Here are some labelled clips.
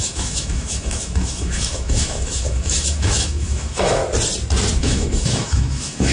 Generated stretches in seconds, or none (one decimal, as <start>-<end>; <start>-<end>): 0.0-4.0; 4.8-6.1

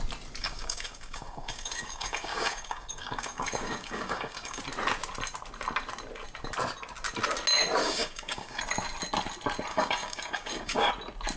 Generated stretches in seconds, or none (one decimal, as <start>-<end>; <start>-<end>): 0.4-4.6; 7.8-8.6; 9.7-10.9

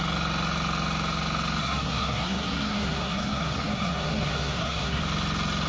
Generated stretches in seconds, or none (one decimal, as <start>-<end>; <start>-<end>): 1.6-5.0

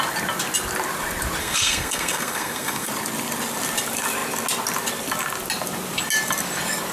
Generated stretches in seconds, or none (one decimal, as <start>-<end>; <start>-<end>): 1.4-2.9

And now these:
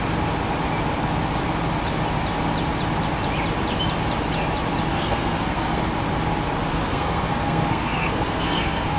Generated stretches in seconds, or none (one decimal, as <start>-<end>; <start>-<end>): 4.9-5.8; 6.7-9.0

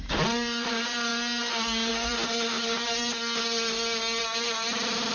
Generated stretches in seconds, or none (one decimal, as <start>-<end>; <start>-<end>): 0.0-1.1; 1.9-3.1; 4.2-5.1